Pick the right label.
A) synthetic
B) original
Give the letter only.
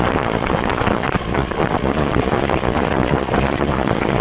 A